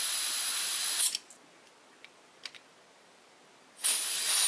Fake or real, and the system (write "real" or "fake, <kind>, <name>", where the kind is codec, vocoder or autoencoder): real